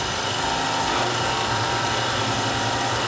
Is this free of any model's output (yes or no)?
yes